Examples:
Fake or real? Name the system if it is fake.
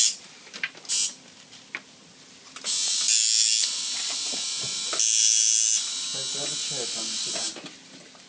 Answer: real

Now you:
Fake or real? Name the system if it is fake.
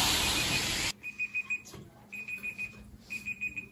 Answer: fake, vocoder, BigVGAN v2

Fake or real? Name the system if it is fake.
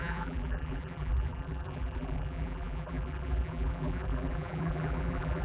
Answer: fake, vocoder, BigVGAN v2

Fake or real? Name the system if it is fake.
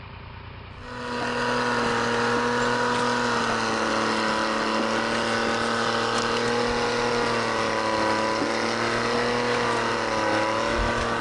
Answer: real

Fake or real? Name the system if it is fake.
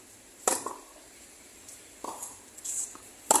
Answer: fake, vocoder, BigVGAN v2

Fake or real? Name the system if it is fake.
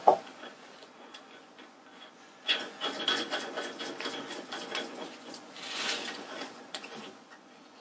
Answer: fake, vocoder, Vocos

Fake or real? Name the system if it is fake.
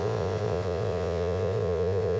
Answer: fake, vocoder, Vocos